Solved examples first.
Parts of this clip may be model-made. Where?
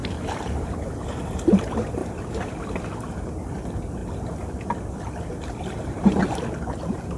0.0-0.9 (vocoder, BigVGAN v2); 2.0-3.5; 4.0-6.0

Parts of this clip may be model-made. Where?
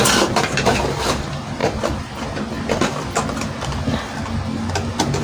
none